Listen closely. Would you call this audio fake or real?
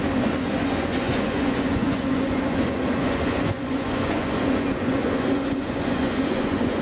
fake